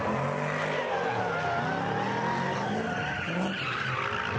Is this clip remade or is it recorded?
recorded